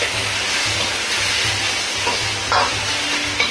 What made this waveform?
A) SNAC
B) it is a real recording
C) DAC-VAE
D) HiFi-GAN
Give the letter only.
B